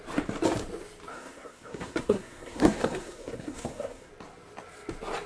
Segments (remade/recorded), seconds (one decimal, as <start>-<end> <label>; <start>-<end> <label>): 0.0-1.1 recorded; 1.1-4.1 remade; 4.1-5.3 recorded

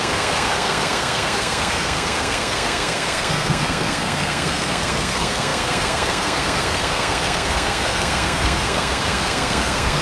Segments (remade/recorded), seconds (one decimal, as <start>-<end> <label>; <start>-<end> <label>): 0.0-10.0 remade

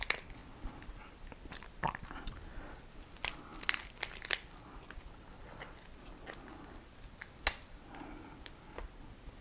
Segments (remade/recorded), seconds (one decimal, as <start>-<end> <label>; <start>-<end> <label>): 0.0-9.4 recorded

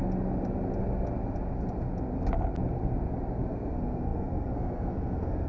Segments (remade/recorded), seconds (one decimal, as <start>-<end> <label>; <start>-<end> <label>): 0.0-3.3 recorded; 3.3-5.5 remade